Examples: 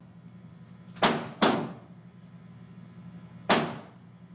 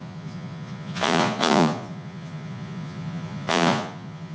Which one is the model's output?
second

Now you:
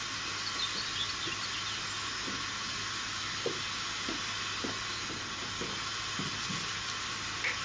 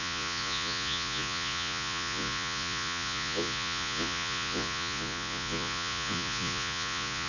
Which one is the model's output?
second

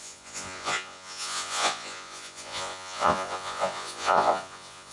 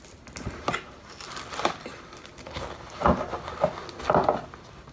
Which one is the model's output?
first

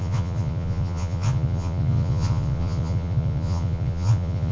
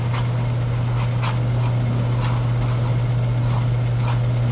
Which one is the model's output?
first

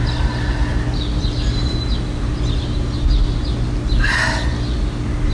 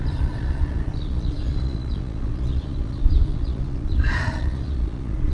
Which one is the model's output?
second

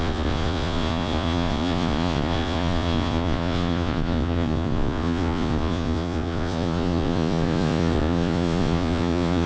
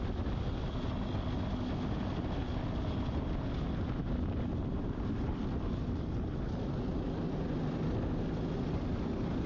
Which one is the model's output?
first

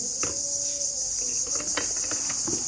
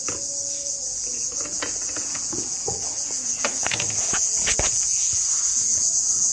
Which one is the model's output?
second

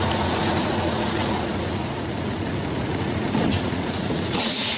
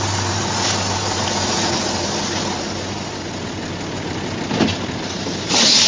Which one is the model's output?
first